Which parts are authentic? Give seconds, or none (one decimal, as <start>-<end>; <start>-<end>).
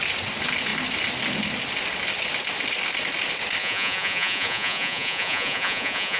0.0-3.6